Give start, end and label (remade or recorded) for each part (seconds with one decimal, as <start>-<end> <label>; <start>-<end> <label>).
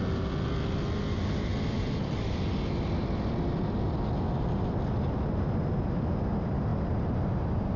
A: 0.0-7.8 recorded